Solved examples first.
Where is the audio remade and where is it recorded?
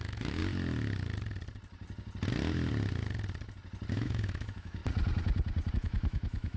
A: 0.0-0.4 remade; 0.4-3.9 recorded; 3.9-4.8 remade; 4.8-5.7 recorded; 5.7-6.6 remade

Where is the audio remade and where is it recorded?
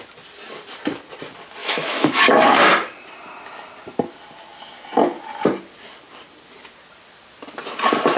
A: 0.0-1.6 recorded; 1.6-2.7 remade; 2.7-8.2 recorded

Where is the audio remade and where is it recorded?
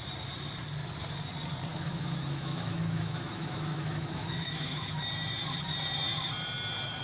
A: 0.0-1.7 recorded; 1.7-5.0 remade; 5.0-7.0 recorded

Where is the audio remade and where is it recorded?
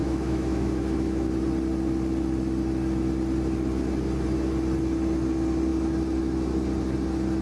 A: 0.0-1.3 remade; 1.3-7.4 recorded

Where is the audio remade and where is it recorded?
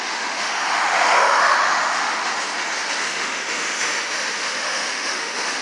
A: 0.0-2.3 remade; 2.3-3.0 recorded; 3.0-5.6 remade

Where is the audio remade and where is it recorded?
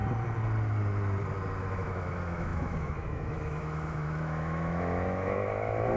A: 0.0-1.6 recorded; 1.6-6.0 remade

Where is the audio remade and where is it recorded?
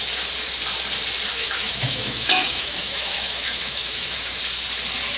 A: 0.0-1.3 recorded; 1.3-4.4 remade; 4.4-5.2 recorded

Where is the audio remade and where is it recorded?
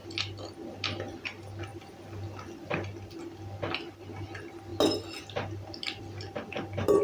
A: 0.0-7.0 recorded